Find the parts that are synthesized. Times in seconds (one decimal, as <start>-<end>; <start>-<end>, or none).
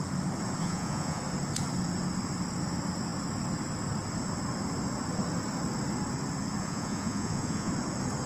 0.6-1.2; 6.6-7.7